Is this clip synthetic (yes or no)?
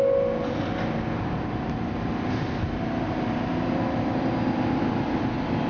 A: no